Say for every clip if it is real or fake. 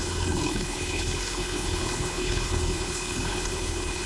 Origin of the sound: fake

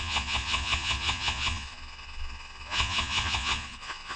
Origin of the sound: fake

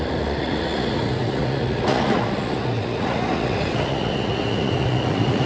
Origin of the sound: fake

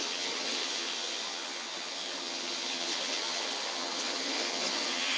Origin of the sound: fake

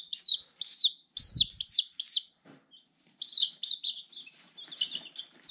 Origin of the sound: fake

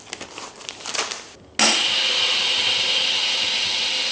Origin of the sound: real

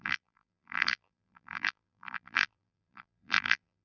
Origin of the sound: fake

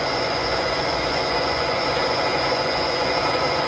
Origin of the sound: fake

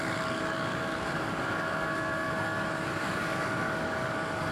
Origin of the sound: fake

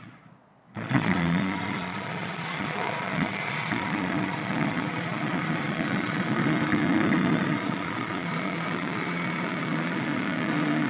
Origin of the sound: fake